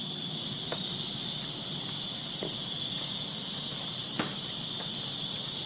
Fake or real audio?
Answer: real